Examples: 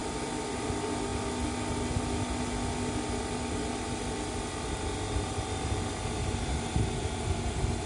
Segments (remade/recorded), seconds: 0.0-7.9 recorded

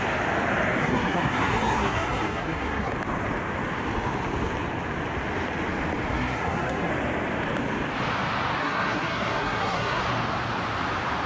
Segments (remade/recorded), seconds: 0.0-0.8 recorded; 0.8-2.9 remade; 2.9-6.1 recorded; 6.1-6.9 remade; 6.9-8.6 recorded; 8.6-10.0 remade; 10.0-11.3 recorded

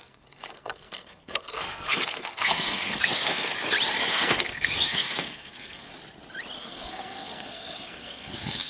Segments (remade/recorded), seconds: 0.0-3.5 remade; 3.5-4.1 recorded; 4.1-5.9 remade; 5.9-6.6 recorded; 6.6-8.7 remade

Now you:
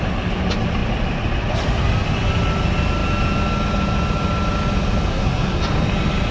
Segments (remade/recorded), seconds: 0.0-5.1 recorded; 5.1-5.6 remade; 5.6-6.3 recorded

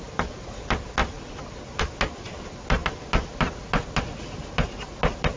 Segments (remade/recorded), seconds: 0.0-5.4 recorded

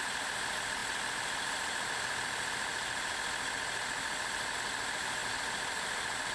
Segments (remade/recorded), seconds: 0.0-6.3 recorded

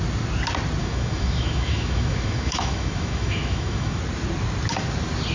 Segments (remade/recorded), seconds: 0.0-0.8 recorded; 0.8-4.0 remade; 4.0-5.3 recorded

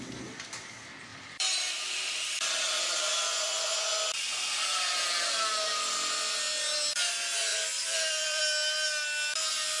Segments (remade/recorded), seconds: 0.0-1.1 recorded; 1.1-2.0 remade; 2.0-7.5 recorded; 7.5-8.4 remade; 8.4-9.8 recorded